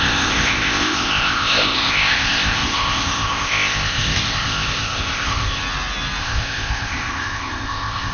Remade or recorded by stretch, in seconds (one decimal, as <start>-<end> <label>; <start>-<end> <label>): 0.0-5.6 remade; 5.6-6.2 recorded; 6.2-8.1 remade